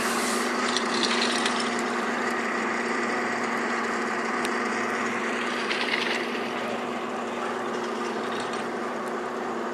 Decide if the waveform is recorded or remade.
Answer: remade